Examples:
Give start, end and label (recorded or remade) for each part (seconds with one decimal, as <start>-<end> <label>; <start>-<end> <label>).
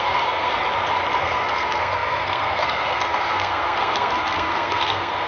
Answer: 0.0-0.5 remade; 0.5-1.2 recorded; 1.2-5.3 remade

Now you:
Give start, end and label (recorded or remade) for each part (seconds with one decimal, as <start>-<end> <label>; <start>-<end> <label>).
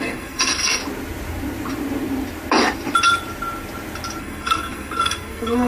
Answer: 0.0-0.8 remade; 0.8-4.2 recorded; 4.2-5.7 remade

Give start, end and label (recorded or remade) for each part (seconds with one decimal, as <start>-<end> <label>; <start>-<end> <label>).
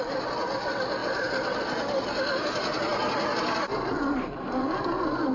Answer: 0.0-5.3 recorded